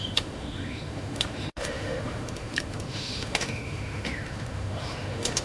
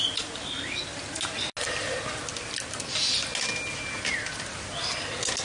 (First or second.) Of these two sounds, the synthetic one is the first